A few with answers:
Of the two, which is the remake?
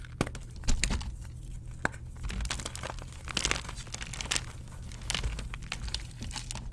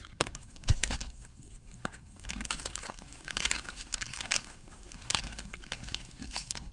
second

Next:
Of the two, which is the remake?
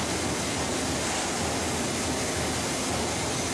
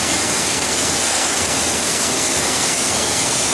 second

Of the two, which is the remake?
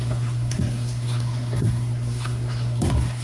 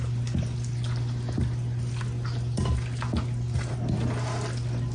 first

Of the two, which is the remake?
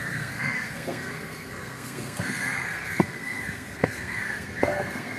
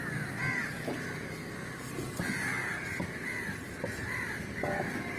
first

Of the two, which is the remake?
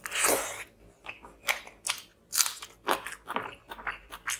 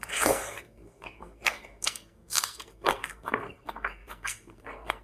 second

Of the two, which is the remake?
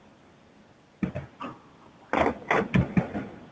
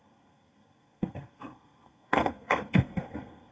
second